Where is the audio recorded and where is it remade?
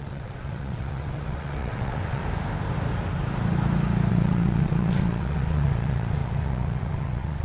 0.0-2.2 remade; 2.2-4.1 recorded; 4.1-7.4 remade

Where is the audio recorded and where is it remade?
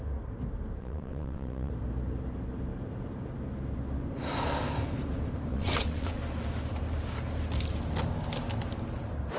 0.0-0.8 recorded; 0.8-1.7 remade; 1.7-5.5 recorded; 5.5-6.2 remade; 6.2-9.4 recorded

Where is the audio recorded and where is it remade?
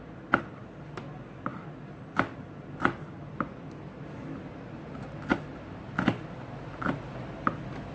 0.0-7.9 recorded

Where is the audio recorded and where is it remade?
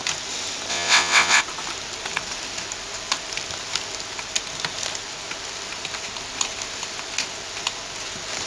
0.0-0.7 recorded; 0.7-1.4 remade; 1.4-8.5 recorded